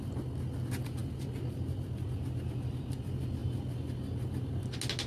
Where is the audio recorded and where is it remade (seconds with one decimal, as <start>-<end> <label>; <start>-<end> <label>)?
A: 0.0-5.1 recorded